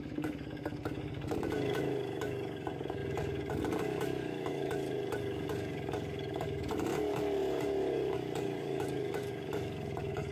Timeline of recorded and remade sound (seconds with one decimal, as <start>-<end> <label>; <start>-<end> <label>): 0.0-10.3 remade